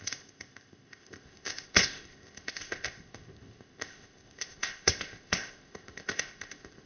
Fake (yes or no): yes